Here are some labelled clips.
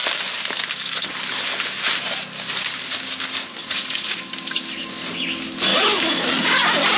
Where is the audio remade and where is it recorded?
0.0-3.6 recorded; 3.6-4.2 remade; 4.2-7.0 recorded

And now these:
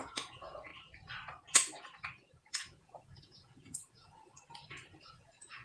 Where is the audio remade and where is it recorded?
0.0-0.7 remade; 0.7-2.5 recorded; 2.5-4.3 remade; 4.3-5.0 recorded; 5.0-5.6 remade